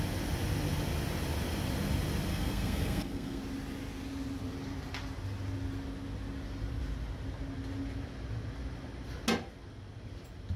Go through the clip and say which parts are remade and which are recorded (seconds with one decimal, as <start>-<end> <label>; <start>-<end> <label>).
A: 0.0-2.3 recorded; 2.3-3.4 remade; 3.4-10.6 recorded